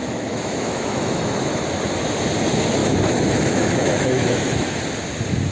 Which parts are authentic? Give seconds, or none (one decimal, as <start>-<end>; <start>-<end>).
1.6-2.8; 4.8-5.5